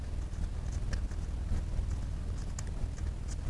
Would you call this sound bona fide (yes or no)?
yes